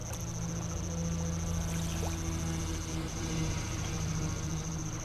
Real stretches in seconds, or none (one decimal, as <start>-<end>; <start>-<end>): 0.0-3.0